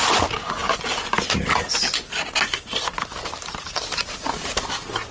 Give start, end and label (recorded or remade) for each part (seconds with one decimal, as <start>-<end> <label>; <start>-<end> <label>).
0.0-5.1 recorded